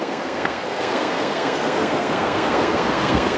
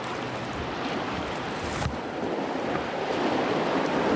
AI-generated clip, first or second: first